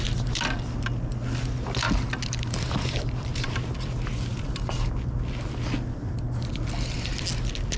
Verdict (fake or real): real